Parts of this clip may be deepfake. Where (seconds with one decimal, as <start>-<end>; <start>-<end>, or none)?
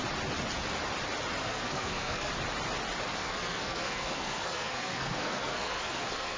1.4-2.3; 3.2-6.4